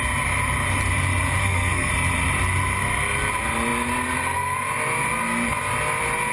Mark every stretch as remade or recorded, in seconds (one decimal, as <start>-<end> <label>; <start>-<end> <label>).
0.0-1.4 recorded; 1.4-1.9 remade; 1.9-6.3 recorded